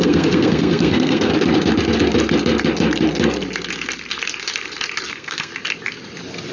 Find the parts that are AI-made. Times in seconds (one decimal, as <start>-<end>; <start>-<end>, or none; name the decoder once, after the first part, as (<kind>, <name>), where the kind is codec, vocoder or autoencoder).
0.0-1.3 (codec, SNAC); 5.1-5.5